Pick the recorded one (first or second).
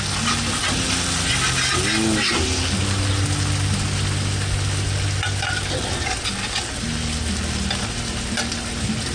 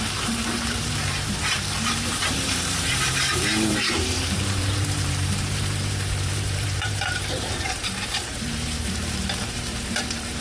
first